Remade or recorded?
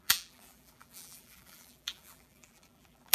remade